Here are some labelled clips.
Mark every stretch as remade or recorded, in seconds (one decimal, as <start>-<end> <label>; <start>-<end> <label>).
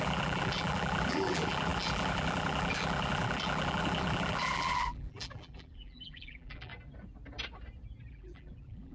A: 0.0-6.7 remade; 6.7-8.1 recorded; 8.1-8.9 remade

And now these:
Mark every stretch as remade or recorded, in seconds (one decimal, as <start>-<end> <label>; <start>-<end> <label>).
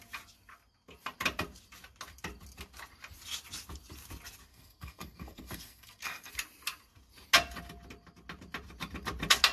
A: 0.0-4.5 recorded; 4.5-6.3 remade; 6.3-9.5 recorded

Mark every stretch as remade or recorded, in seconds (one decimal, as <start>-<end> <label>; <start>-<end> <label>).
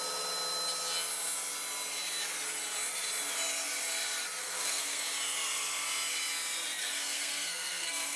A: 0.0-4.4 recorded; 4.4-5.0 remade; 5.0-6.8 recorded; 6.8-8.2 remade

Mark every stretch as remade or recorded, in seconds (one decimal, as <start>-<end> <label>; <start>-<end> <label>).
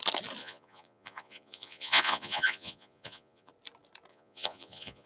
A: 0.0-0.4 recorded; 0.4-3.5 remade; 3.5-4.1 recorded; 4.1-5.1 remade